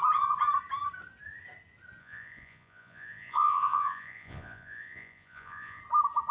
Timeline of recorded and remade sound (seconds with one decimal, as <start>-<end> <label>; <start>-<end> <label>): 0.0-2.0 recorded; 2.0-5.8 remade; 5.8-6.3 recorded